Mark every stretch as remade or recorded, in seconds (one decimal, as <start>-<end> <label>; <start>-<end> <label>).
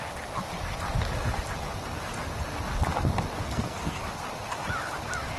0.0-3.4 recorded; 3.4-4.0 remade; 4.0-5.4 recorded